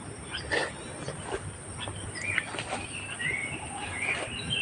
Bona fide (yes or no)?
yes